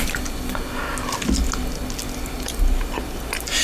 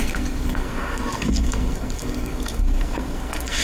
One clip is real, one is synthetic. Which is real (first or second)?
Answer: first